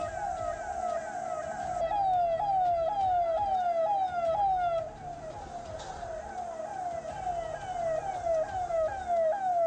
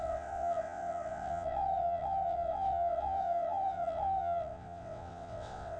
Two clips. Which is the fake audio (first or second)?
second